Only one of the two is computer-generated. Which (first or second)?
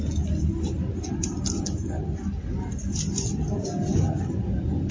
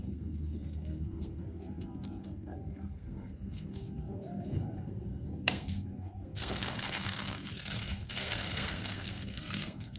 second